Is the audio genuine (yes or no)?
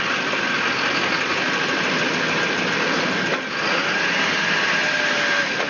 yes